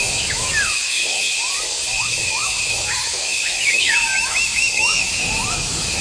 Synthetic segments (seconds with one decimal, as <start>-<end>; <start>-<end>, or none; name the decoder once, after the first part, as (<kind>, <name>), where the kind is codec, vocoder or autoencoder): 0.0-1.3 (autoencoder, DAC-VAE); 2.0-6.0